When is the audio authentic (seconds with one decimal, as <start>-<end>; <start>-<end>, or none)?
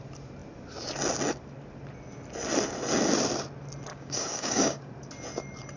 0.0-3.9; 4.9-5.8